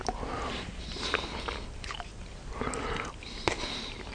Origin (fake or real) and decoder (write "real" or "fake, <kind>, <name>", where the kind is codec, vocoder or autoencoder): real